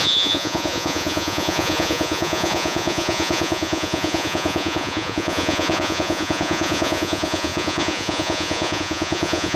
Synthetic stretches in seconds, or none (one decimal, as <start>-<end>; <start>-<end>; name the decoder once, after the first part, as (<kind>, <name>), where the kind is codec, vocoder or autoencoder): 0.0-9.6 (vocoder, Vocos)

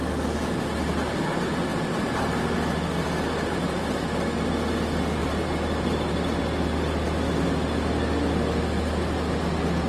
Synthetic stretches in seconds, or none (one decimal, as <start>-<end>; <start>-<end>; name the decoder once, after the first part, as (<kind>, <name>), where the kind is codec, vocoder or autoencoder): 5.2-6.4 (vocoder, BigVGAN v2)

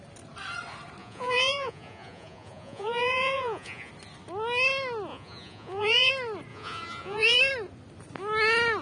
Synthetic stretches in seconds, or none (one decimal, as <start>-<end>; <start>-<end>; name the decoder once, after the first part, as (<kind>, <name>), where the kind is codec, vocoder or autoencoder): 1.0-3.9 (vocoder, Vocos); 5.1-6.1; 6.5-7.4